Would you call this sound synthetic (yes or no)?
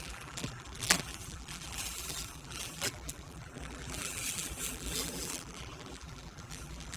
yes